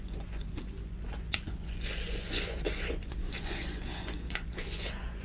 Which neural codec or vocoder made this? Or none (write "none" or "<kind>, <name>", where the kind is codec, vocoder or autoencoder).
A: vocoder, Vocos